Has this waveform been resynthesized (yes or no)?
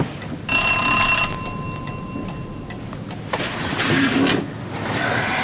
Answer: no